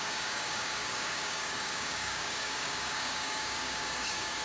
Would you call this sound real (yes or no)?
no